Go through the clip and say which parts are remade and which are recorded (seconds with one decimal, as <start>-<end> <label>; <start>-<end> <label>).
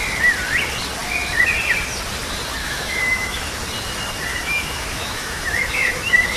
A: 0.0-2.6 recorded; 2.6-3.4 remade; 3.4-4.3 recorded; 4.3-6.4 remade